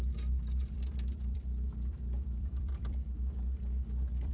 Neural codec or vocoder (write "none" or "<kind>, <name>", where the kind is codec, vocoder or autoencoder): vocoder, BigVGAN v2